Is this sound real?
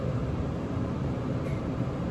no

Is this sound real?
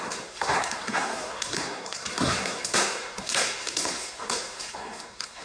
no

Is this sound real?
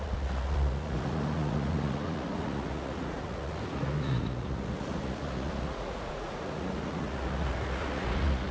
no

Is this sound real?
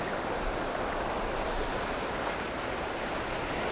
yes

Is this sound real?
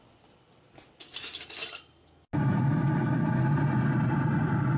yes